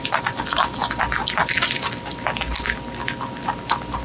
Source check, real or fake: real